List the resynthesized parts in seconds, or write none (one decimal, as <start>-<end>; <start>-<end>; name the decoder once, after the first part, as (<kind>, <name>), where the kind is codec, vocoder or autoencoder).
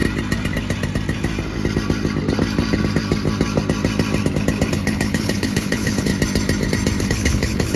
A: 4.7-6.1 (codec, HILCodec); 7.0-7.8